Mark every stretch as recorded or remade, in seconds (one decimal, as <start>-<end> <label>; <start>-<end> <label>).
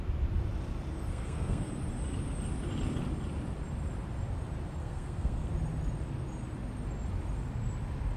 0.0-1.1 recorded; 1.1-1.7 remade; 1.7-4.8 recorded; 4.8-5.5 remade; 5.5-8.2 recorded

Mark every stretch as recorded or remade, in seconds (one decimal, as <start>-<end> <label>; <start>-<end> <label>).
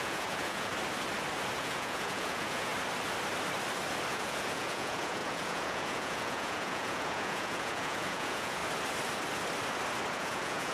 0.0-0.7 remade; 0.7-1.6 recorded; 1.6-2.7 remade; 2.7-4.1 recorded; 4.1-8.6 remade; 8.6-10.1 recorded; 10.1-10.7 remade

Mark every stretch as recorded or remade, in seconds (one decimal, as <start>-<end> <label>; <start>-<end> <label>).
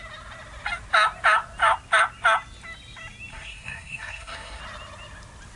0.0-3.3 recorded; 3.3-4.6 remade; 4.6-5.6 recorded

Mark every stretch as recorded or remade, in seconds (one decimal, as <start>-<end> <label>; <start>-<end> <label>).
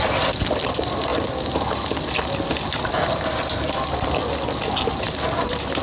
0.0-5.8 recorded